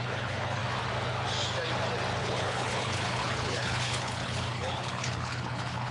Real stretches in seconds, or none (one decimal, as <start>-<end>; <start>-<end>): 0.6-2.2